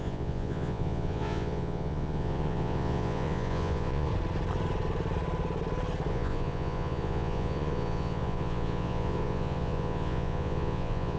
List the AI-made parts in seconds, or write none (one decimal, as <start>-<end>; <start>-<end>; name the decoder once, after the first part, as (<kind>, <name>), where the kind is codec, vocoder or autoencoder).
0.0-4.1 (vocoder, Vocos); 6.1-11.2